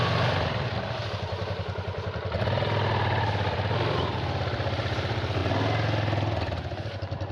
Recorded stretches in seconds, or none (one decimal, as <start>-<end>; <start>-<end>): 5.4-7.3